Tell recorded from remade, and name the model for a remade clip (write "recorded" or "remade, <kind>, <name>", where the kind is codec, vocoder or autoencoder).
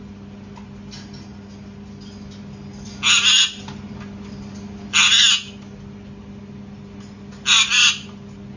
recorded